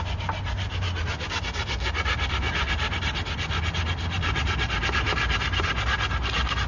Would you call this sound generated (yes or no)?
no